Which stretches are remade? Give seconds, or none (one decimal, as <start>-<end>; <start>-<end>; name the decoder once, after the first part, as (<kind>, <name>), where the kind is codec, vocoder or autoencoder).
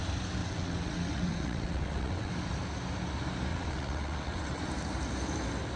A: 0.4-2.3 (vocoder, WaveNeXt); 3.5-4.6